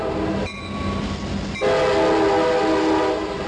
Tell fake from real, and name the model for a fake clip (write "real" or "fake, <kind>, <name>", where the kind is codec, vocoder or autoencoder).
real